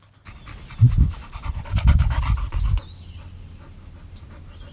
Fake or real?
real